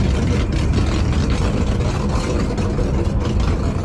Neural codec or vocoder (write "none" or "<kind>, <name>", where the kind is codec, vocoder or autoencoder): none